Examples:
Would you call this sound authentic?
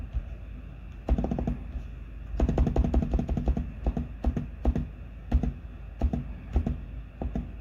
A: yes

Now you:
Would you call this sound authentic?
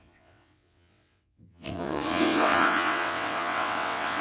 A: no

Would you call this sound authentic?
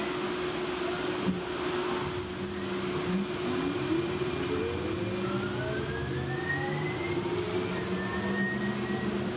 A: yes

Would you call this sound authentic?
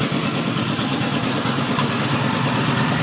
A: yes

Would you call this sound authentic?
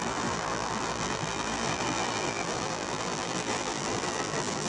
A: no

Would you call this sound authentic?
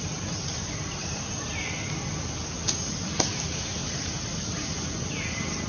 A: yes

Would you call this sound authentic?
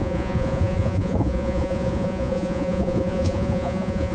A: no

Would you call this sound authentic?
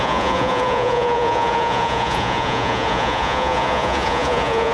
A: no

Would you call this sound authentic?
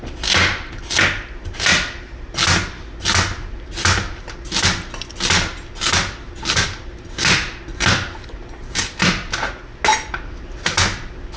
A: yes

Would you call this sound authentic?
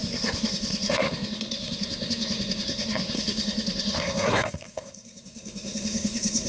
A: no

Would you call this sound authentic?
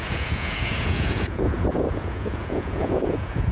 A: no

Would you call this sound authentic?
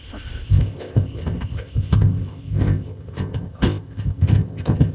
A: no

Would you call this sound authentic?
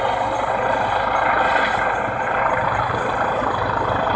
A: yes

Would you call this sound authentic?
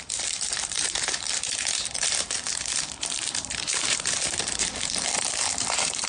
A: no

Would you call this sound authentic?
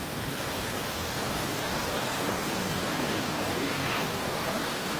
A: no